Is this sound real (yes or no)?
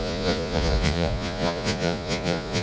no